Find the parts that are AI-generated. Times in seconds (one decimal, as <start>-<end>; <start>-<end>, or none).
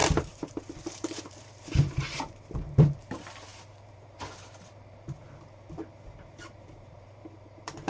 0.0-5.2; 6.7-7.9